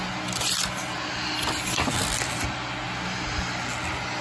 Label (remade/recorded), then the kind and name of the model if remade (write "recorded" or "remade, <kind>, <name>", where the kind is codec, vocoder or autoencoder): recorded